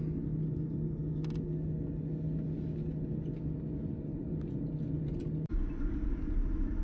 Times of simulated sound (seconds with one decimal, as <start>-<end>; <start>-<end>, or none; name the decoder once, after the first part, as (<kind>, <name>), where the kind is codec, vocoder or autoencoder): 4.1-4.6 (vocoder, BigVGAN v2)